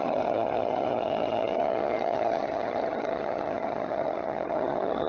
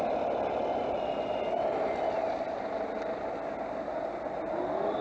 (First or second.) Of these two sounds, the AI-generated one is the first